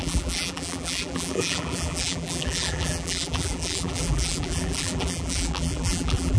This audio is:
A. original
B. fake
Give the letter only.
B